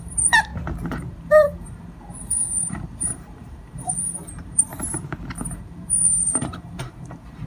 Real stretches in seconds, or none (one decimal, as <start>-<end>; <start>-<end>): 0.5-1.1; 4.7-5.6

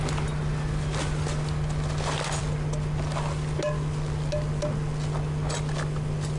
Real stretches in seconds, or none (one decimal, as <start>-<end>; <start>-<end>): 0.0-6.4